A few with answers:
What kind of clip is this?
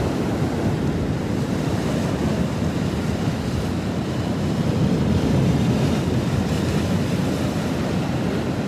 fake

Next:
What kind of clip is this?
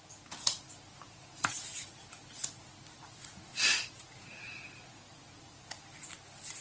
real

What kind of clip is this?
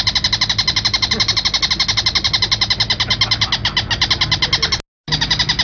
real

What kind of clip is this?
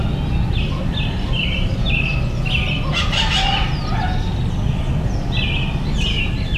real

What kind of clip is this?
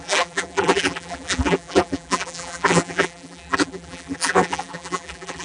fake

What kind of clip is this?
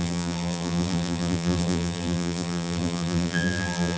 fake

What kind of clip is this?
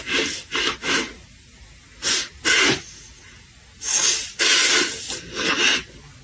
real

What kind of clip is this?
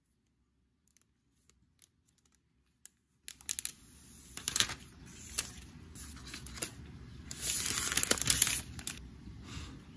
real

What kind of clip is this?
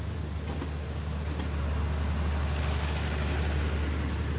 real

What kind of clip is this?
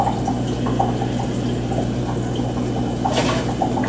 real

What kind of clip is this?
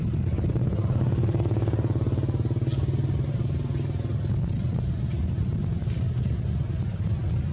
real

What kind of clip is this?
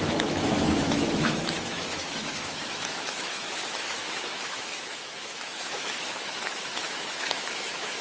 fake